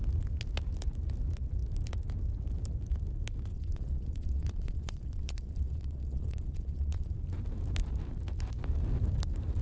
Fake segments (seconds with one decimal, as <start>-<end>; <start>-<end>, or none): 3.5-7.1